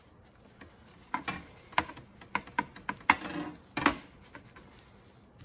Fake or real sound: real